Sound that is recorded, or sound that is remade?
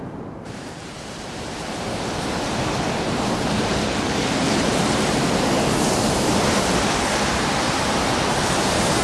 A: remade